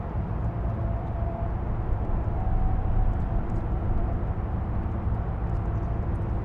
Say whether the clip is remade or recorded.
recorded